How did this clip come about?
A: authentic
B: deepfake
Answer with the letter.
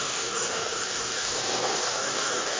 B